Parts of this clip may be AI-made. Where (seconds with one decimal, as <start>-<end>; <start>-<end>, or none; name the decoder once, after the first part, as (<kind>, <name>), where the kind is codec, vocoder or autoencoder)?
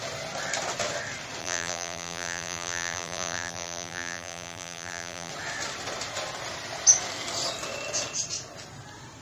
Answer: 1.4-5.3 (vocoder, BigVGAN v2)